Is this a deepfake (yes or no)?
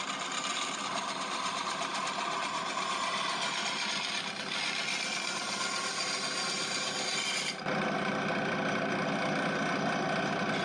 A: no